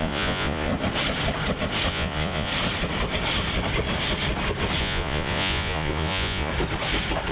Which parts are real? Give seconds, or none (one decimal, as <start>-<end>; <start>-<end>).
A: 0.7-1.9; 2.5-4.8; 6.5-7.3